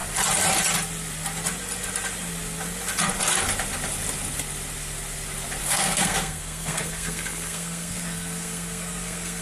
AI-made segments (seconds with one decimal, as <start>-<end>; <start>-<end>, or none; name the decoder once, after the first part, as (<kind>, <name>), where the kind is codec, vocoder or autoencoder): 5.6-9.4 (codec, SNAC)